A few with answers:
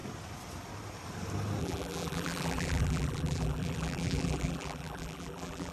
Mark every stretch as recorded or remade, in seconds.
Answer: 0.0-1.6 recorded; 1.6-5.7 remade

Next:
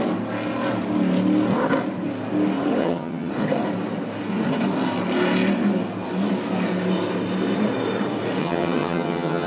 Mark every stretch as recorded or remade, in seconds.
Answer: 0.0-2.8 recorded; 2.8-3.3 remade; 3.3-8.4 recorded; 8.4-9.5 remade

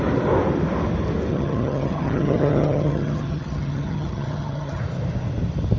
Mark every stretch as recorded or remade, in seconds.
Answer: 0.0-1.3 recorded; 1.3-4.8 remade; 4.8-5.8 recorded